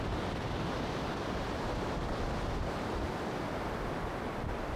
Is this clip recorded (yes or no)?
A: yes